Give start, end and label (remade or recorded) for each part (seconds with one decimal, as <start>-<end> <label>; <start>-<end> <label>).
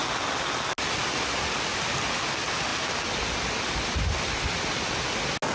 0.0-5.5 recorded